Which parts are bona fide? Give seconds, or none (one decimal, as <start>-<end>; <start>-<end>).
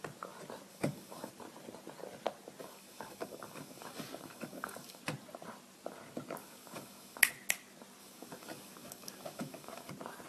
0.0-0.7; 1.3-2.6; 5.0-6.4; 7.3-8.0; 9.9-10.3